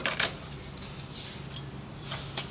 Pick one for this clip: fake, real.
real